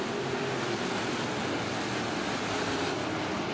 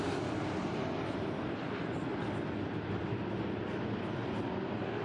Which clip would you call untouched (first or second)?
first